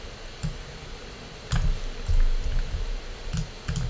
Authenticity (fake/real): real